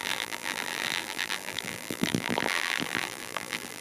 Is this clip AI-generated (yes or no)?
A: yes